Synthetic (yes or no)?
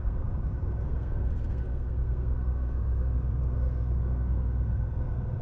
yes